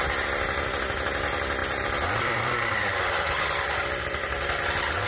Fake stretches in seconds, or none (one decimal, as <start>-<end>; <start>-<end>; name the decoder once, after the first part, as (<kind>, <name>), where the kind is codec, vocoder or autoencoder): 1.6-5.1 (vocoder, BigVGAN v2)